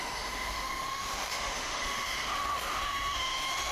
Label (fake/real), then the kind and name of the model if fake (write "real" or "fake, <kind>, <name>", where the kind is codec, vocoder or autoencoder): fake, autoencoder, DAC-VAE